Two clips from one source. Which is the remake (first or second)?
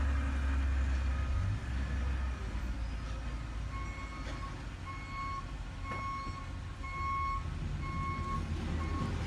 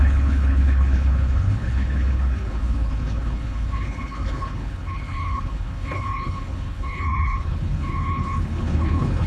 second